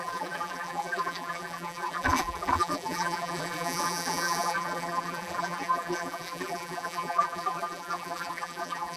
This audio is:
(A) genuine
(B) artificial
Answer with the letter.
B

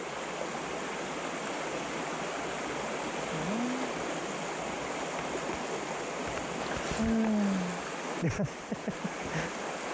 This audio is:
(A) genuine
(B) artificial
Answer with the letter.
A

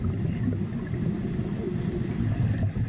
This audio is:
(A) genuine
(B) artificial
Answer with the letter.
A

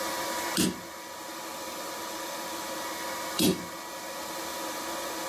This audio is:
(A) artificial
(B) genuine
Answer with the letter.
B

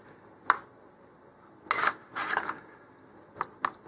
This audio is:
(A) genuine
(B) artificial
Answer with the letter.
A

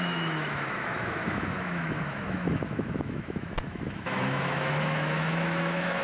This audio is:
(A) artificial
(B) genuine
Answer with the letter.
A